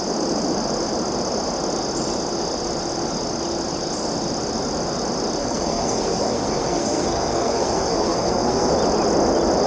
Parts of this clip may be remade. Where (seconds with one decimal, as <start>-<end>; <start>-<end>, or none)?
5.4-8.7